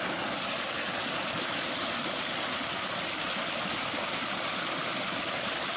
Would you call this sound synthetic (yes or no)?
no